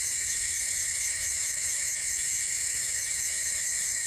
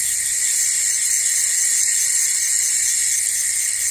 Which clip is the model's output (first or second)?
first